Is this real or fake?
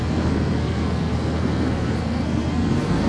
fake